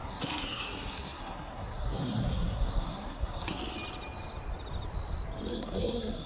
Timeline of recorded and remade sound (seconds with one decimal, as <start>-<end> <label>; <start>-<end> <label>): 0.0-3.6 remade; 3.6-5.5 recorded; 5.5-6.3 remade